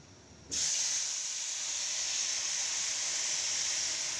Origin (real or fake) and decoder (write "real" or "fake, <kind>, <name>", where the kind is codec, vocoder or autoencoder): real